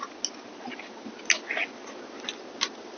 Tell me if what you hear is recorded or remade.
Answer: recorded